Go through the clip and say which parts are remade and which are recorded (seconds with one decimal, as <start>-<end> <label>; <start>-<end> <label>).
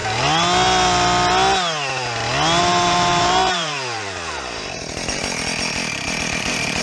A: 0.0-2.6 recorded; 2.6-5.2 remade; 5.2-5.9 recorded; 5.9-6.8 remade